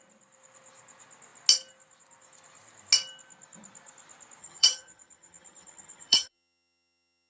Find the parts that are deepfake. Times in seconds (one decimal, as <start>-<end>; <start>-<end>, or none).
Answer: 4.4-7.3